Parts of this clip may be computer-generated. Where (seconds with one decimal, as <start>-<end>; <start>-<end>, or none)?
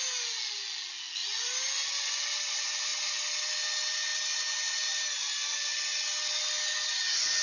none